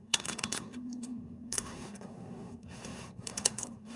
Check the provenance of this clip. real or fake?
fake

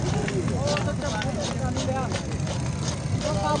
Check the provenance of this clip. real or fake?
real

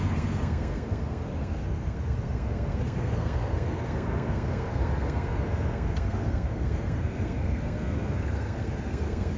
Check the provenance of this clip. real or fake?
fake